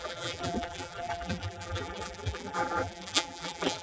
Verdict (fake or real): fake